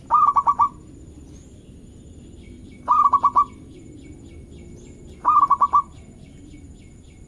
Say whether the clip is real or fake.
real